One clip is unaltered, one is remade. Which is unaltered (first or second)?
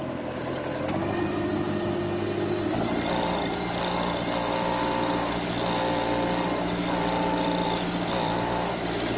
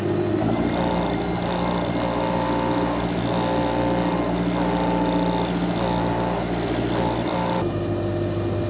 second